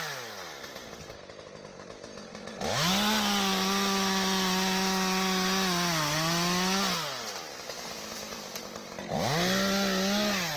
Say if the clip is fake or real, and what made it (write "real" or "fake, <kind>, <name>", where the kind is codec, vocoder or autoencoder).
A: real